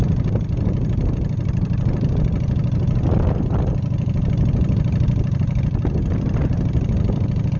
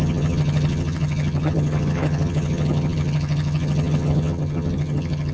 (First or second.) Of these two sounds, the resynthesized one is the second